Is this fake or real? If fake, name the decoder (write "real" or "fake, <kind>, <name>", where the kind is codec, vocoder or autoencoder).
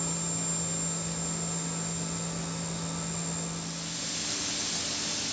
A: real